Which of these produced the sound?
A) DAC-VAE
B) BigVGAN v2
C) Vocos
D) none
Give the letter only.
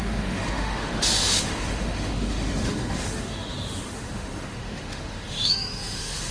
A